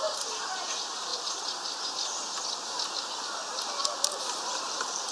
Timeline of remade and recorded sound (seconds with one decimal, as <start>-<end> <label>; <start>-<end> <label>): 0.0-1.1 remade; 1.1-4.2 recorded; 4.2-5.1 remade